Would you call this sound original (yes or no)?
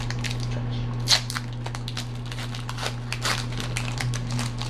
yes